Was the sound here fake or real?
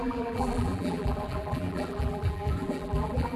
fake